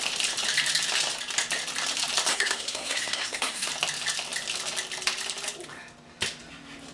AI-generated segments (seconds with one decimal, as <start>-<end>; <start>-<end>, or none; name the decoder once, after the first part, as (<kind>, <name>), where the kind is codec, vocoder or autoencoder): 2.3-3.7 (codec, SNAC)